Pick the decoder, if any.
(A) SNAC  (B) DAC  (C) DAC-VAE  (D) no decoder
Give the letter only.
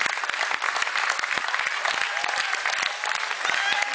D